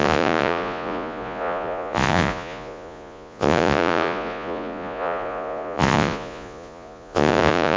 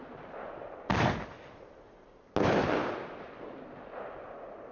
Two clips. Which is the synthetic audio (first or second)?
first